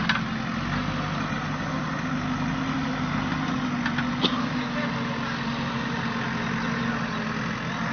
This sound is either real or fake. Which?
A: real